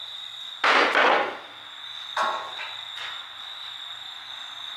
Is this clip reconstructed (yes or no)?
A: no